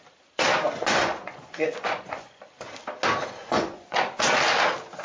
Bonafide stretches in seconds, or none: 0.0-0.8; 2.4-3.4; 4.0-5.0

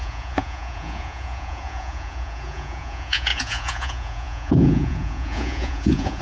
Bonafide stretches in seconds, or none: none

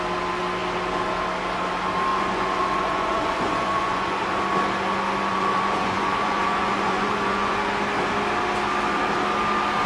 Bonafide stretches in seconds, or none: 0.0-2.1; 4.2-5.3; 7.7-9.9

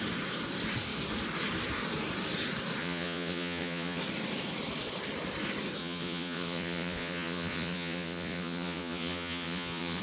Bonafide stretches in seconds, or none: 0.0-2.8; 4.0-5.8

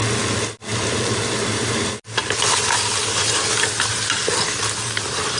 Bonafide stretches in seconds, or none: 0.0-5.4

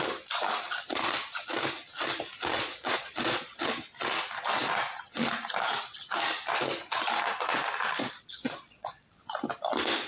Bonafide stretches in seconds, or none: 0.0-2.5; 3.6-8.0; 9.2-10.1